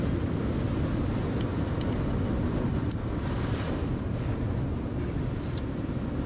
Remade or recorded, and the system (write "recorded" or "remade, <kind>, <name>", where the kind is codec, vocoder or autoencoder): recorded